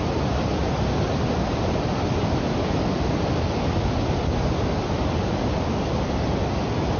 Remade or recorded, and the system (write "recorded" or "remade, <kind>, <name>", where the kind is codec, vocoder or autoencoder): recorded